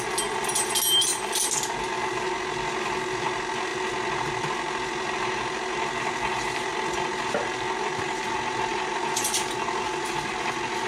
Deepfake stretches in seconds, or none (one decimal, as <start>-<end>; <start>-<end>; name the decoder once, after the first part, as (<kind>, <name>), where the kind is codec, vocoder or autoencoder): none